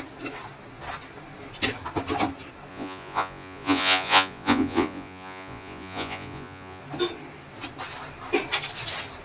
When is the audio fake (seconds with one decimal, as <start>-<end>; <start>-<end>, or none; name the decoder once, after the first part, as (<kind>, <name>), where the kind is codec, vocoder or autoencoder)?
2.7-6.8 (vocoder, Vocos)